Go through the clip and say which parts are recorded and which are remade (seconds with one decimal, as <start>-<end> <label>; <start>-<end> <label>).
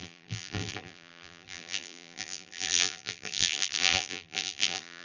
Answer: 0.0-5.0 remade